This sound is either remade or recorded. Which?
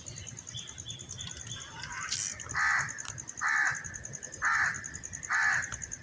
recorded